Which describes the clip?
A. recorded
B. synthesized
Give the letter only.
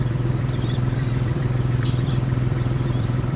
B